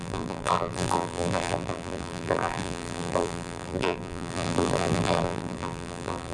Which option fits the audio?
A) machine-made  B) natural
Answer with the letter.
A